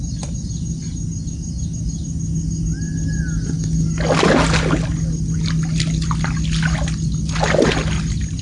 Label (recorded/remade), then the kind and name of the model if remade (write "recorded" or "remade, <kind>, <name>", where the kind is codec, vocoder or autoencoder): recorded